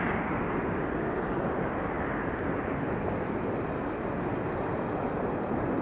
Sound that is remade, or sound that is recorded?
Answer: recorded